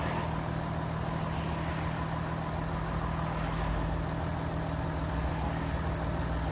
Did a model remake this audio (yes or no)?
no